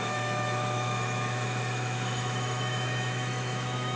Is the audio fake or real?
fake